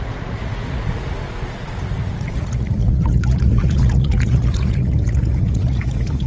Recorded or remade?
remade